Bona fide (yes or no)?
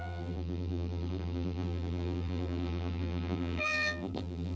no